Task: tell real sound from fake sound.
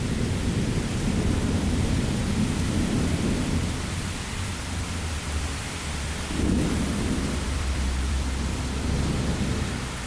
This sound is fake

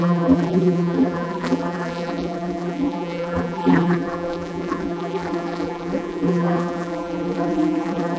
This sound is fake